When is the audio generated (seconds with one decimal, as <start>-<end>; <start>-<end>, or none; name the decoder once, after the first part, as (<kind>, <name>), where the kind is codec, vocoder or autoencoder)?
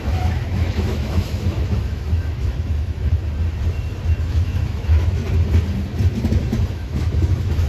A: 0.0-3.2 (autoencoder, DAC-VAE); 4.3-5.2; 6.7-7.7